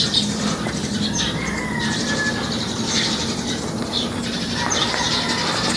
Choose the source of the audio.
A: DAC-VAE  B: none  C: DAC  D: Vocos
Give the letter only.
B